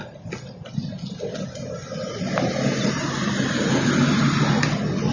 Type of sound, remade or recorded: recorded